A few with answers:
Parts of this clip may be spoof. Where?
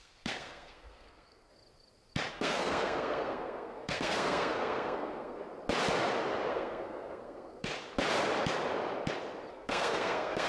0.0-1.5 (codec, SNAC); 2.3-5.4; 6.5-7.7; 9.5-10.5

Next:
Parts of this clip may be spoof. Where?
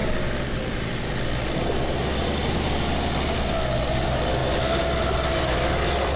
0.0-1.1 (vocoder, BigVGAN v2)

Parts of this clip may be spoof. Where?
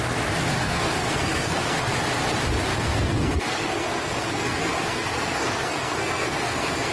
0.6-1.9 (codec, SNAC); 2.7-6.9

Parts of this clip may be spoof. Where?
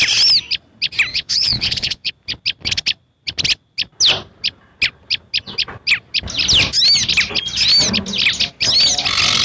1.1-2.1 (vocoder, Vocos)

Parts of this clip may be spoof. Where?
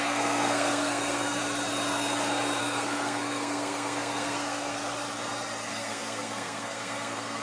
0.0-1.4 (codec, SNAC); 2.6-4.8; 5.7-7.4